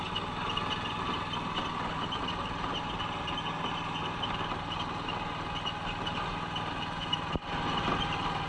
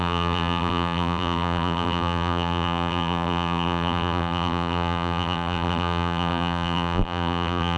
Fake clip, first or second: second